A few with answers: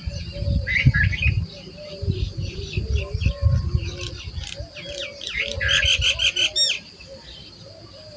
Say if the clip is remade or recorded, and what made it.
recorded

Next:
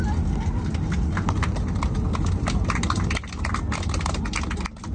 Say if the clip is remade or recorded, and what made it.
recorded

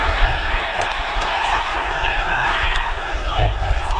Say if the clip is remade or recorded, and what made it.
remade, codec, SNAC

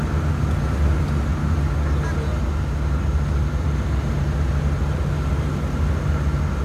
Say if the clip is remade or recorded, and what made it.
recorded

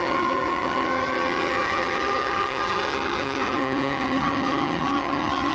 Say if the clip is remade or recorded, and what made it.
remade, vocoder, HiFi-GAN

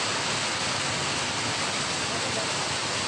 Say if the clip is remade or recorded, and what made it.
recorded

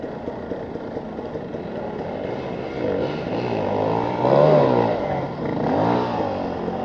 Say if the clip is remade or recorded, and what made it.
recorded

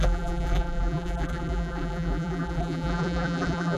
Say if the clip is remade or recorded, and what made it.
remade, vocoder, BigVGAN v2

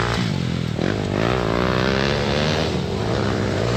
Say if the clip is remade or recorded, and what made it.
recorded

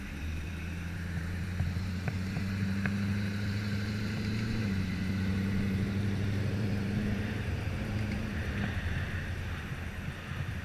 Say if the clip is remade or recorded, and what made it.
remade, vocoder, BigVGAN v2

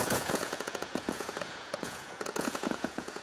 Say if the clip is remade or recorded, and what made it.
remade, vocoder, Vocos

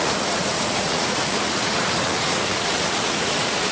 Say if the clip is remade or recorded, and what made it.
remade, vocoder, Vocos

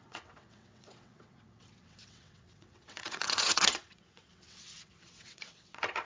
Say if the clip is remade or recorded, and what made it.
remade, vocoder, WaveNeXt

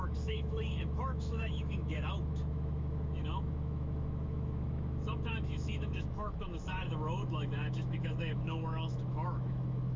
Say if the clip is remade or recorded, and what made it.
remade, autoencoder, DAC-VAE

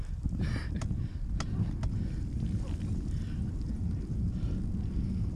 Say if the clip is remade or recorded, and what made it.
recorded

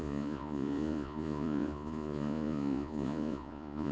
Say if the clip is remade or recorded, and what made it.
remade, vocoder, Vocos